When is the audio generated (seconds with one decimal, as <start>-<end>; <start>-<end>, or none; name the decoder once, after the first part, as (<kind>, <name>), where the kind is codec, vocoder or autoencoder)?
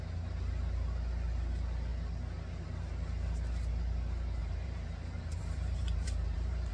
4.4-6.7 (vocoder, BigVGAN v2)